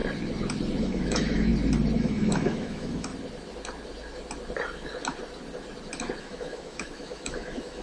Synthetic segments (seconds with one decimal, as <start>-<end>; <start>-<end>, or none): 0.8-1.5; 2.0-3.1; 6.2-7.8